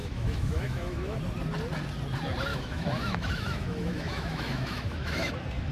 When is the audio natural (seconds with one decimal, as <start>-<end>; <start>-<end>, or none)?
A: 1.2-2.5; 5.3-5.7